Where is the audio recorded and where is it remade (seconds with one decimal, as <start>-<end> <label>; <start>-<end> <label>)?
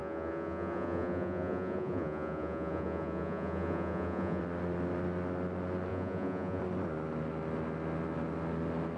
0.0-4.4 remade; 4.4-5.9 recorded; 5.9-6.6 remade; 6.6-9.0 recorded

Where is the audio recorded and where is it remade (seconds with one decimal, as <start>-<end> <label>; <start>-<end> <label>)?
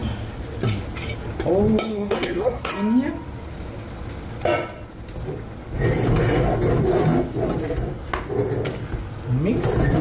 0.0-1.9 recorded; 1.9-2.7 remade; 2.7-10.0 recorded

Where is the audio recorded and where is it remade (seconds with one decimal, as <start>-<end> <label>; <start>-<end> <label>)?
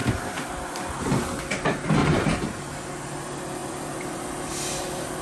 0.0-1.0 remade; 1.0-2.0 recorded; 2.0-2.6 remade; 2.6-5.2 recorded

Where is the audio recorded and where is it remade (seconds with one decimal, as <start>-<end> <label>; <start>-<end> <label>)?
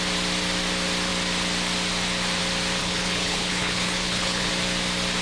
0.0-2.8 recorded; 2.8-4.5 remade; 4.5-5.2 recorded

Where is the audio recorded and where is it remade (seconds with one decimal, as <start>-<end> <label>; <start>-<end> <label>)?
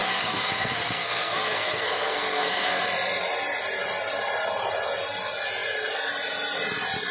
0.0-2.8 remade; 2.8-7.1 recorded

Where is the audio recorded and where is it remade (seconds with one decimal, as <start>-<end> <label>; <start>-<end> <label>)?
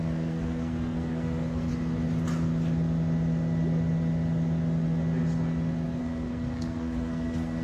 0.0-1.7 remade; 1.7-6.0 recorded; 6.0-7.6 remade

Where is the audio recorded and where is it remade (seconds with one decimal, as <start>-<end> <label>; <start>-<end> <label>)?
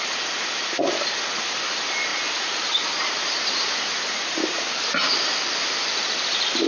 0.0-2.1 recorded; 2.1-5.4 remade; 5.4-6.7 recorded